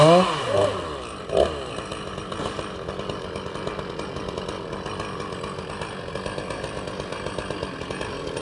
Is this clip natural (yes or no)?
yes